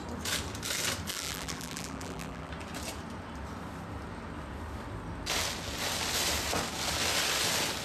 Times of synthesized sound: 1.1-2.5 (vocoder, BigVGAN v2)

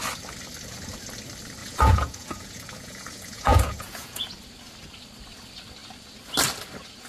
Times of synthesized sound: 1.6-4.3 (vocoder, Vocos)

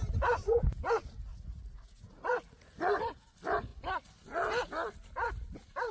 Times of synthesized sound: 1.3-3.0 (vocoder, Vocos)

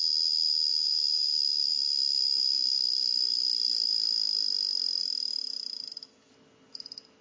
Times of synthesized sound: 0.7-1.7 (autoencoder, DAC-VAE); 2.8-3.9; 5.0-6.3

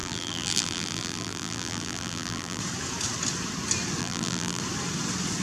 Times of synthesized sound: 0.0-2.6 (vocoder, BigVGAN v2); 4.0-4.6